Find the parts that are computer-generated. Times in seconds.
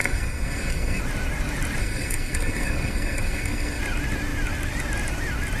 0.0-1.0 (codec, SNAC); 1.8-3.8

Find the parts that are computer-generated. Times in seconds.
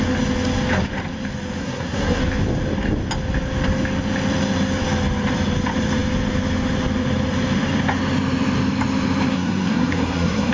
1.6-2.2 (codec, SNAC); 9.3-10.5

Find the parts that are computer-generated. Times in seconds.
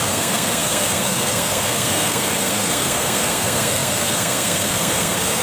0.0-5.4 (codec, SNAC)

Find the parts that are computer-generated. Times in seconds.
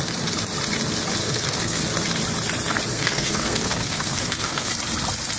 1.2-1.8 (codec, SNAC); 2.9-4.7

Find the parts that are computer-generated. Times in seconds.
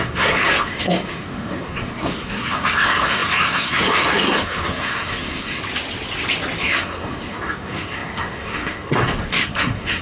0.0-5.6 (codec, SNAC); 6.6-10.0